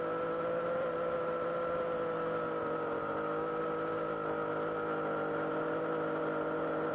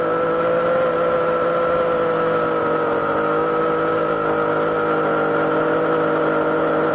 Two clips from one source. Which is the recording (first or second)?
second